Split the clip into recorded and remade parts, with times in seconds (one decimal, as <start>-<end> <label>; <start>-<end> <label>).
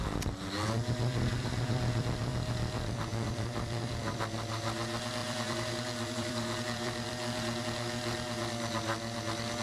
0.0-3.1 recorded; 3.1-4.2 remade; 4.2-5.2 recorded; 5.2-7.6 remade; 7.6-9.6 recorded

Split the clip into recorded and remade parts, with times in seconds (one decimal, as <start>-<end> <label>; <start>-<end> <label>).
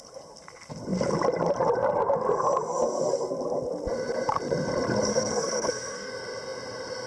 0.0-5.1 recorded; 5.1-6.1 remade; 6.1-7.1 recorded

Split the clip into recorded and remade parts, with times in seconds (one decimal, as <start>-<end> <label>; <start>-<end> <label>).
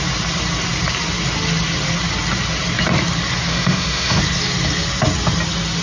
0.0-3.5 recorded; 3.5-4.2 remade; 4.2-5.8 recorded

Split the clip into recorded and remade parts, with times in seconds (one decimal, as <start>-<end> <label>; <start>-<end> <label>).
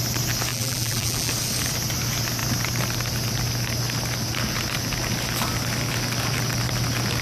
0.0-0.5 recorded; 0.5-1.3 remade; 1.3-7.2 recorded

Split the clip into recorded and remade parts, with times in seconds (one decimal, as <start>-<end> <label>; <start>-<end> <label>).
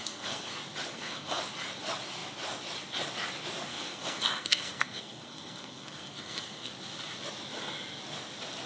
0.0-0.5 remade; 0.5-0.9 recorded; 0.9-1.4 remade; 1.4-3.7 recorded; 3.7-6.7 remade; 6.7-8.7 recorded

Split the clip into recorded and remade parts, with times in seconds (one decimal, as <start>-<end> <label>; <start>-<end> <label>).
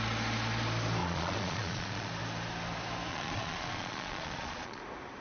0.0-1.0 recorded; 1.0-2.1 remade; 2.1-3.1 recorded; 3.1-4.8 remade; 4.8-5.2 recorded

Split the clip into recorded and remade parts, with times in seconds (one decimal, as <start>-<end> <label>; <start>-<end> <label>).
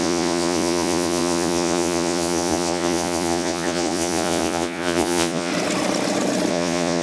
0.0-5.5 remade; 5.5-6.5 recorded; 6.5-7.0 remade